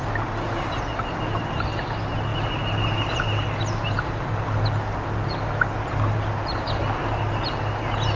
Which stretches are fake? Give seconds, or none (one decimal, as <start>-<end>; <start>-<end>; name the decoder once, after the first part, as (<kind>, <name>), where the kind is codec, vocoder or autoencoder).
none